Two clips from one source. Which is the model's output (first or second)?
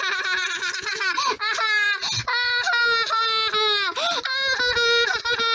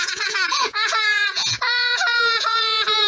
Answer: second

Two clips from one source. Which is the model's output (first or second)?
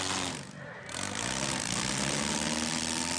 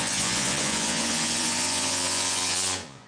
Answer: second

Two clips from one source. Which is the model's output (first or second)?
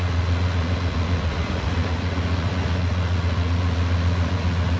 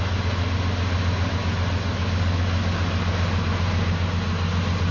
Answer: first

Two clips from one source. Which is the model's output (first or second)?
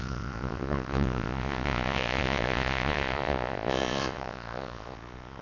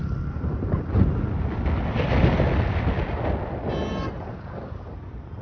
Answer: first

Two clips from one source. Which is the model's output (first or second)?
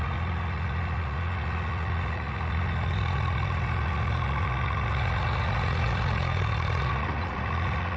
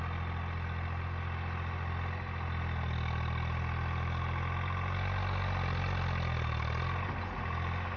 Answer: first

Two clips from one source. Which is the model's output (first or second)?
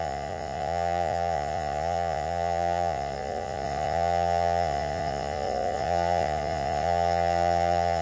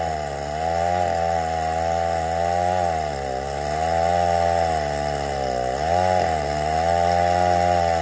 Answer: first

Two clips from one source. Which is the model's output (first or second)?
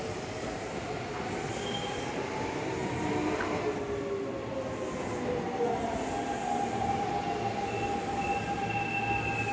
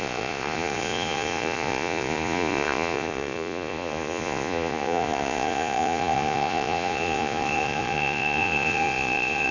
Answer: second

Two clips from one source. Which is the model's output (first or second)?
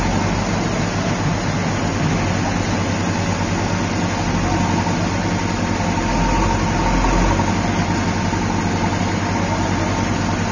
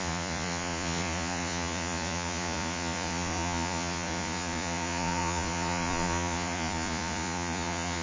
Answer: second